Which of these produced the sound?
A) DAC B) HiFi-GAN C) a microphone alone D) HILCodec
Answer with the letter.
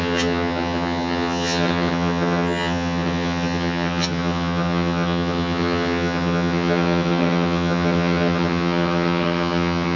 B